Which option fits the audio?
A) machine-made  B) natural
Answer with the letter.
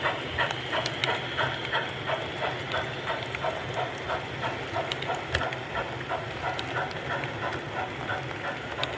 B